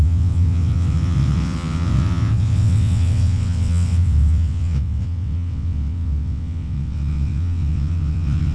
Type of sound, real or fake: fake